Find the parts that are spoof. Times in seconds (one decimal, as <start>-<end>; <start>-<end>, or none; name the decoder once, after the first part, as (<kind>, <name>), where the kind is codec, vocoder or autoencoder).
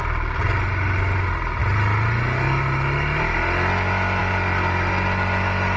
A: none